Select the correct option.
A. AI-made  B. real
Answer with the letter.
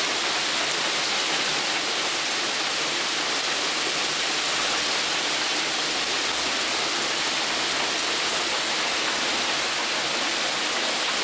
B